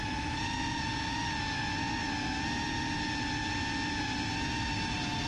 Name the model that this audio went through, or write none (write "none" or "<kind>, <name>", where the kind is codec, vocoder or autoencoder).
none